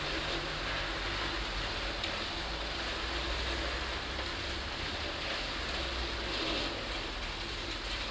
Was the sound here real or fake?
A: real